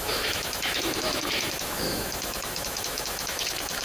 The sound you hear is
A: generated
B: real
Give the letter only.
A